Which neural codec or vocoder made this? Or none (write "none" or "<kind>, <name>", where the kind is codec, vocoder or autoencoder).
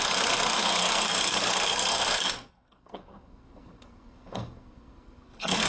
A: codec, SNAC